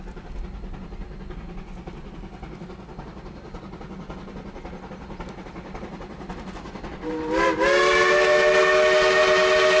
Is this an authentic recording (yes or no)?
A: yes